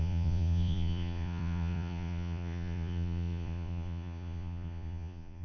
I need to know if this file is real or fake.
fake